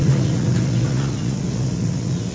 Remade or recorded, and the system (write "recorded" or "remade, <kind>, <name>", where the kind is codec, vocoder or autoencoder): remade, vocoder, Vocos